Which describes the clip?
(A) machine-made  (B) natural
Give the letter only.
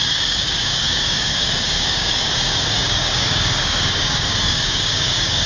A